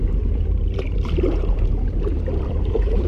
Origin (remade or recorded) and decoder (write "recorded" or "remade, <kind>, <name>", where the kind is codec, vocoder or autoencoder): remade, vocoder, BigVGAN v2